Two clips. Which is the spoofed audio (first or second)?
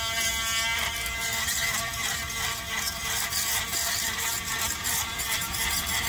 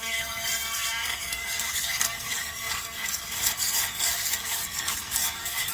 second